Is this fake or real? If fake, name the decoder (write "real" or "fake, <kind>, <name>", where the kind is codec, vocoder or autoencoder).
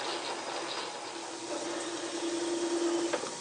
real